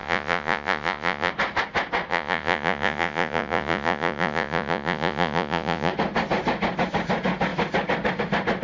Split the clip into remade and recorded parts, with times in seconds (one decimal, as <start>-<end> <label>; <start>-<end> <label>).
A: 0.0-1.3 remade; 1.3-2.1 recorded; 2.1-5.9 remade; 5.9-8.6 recorded